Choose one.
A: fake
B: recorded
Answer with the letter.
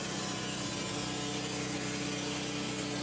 B